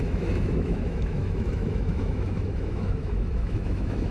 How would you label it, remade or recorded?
remade